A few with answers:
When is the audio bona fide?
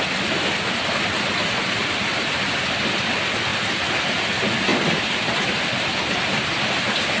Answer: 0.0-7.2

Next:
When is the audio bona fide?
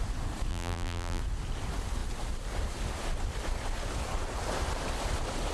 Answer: 0.0-0.5; 1.2-5.5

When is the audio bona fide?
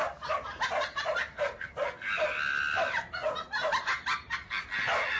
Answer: 0.0-5.2